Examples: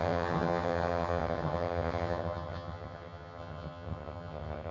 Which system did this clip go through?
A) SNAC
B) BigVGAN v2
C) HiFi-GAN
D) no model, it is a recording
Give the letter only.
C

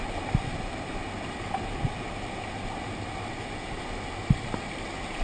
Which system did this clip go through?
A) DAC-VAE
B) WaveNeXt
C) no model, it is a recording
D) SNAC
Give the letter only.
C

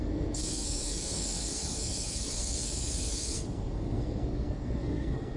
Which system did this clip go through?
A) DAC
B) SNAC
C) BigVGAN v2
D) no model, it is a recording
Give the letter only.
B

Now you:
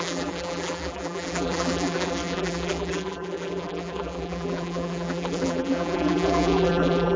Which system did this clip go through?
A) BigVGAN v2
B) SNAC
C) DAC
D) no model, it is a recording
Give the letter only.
A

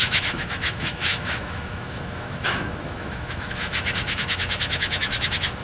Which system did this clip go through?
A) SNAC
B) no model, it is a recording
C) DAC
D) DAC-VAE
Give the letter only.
D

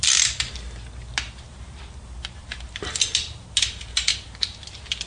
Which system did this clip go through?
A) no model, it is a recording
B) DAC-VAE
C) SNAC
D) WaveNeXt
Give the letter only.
A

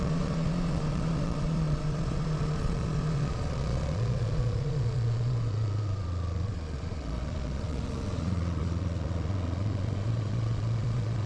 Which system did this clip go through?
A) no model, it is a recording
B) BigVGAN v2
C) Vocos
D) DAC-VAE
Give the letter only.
C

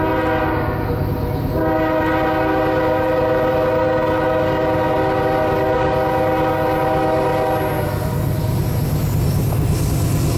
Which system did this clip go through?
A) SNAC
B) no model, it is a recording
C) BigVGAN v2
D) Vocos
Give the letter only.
B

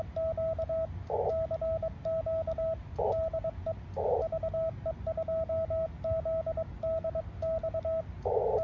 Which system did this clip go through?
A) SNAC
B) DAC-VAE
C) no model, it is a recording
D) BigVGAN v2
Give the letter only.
C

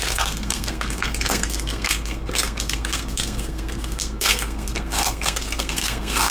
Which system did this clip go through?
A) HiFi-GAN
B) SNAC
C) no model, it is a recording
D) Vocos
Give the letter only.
B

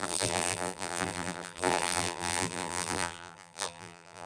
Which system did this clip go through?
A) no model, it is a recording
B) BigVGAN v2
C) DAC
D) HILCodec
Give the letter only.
B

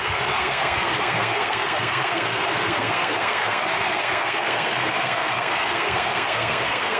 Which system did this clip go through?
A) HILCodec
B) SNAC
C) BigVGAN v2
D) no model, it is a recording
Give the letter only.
B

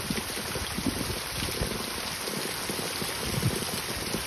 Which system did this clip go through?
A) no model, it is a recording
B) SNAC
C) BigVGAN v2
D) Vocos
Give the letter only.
A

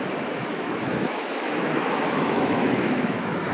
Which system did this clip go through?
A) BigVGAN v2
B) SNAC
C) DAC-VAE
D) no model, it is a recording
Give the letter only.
C